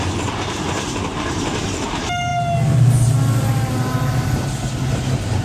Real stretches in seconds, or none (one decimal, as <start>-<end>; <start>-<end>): 0.0-1.1; 1.9-5.4